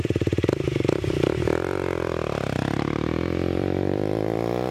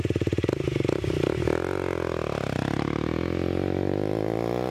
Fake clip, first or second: first